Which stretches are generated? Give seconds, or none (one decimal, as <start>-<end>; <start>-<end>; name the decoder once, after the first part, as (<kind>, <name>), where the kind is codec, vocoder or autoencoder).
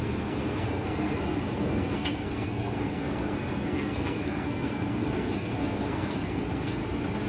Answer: 0.0-6.8 (codec, SNAC)